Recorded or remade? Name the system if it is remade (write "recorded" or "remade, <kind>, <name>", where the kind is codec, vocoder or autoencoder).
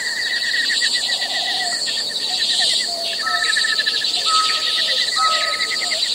remade, vocoder, BigVGAN v2